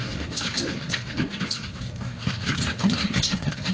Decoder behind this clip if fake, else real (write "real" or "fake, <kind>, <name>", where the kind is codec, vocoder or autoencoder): fake, codec, SNAC